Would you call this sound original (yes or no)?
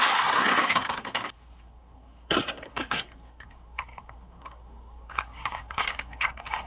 no